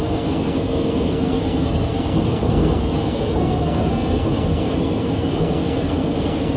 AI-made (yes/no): yes